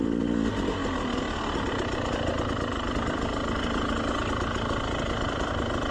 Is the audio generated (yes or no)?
no